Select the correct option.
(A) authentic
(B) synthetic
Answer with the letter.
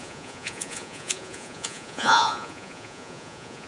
B